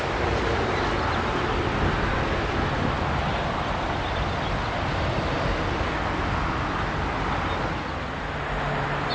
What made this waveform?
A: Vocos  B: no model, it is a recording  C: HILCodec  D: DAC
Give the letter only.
B